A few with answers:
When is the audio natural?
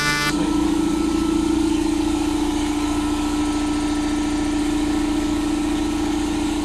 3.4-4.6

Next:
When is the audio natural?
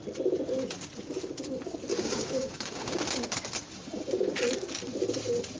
0.0-1.9; 3.0-5.6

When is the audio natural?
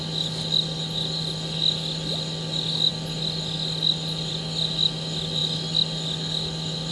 0.0-6.9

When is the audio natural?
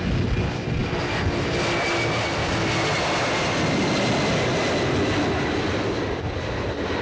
0.0-7.0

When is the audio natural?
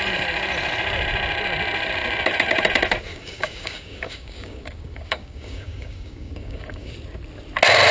0.0-3.1; 6.9-7.9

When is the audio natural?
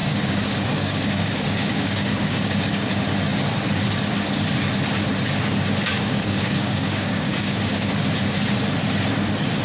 2.9-5.9; 7.9-9.6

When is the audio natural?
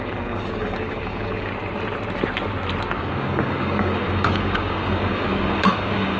1.5-3.0